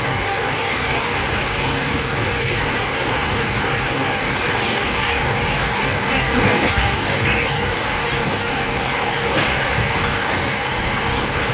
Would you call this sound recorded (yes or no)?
no